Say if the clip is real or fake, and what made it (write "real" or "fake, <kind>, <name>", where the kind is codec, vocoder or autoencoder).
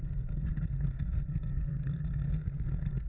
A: fake, codec, SNAC